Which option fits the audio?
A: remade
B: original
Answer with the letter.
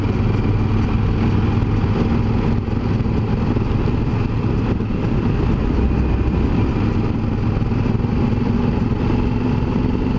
B